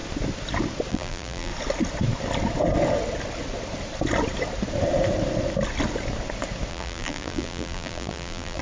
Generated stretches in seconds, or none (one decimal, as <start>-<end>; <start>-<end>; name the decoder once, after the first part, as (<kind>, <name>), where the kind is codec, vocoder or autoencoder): 0.9-1.5 (vocoder, BigVGAN v2); 6.7-8.6

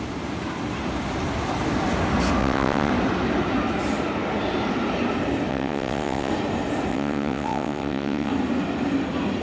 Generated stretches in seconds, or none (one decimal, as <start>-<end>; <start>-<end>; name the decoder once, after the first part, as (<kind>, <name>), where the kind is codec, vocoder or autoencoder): 2.4-2.9 (vocoder, WaveNeXt); 5.5-6.3; 6.9-8.3